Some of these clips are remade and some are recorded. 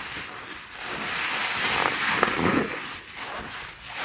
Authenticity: recorded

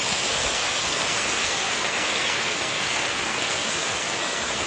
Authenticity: remade